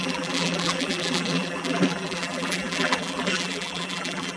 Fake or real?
fake